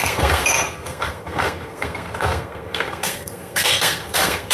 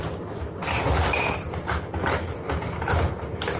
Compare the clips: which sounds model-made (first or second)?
first